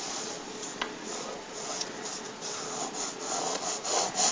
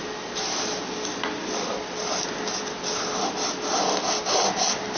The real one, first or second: second